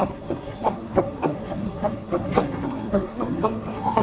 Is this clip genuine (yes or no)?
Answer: no